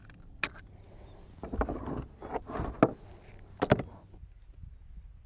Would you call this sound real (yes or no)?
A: yes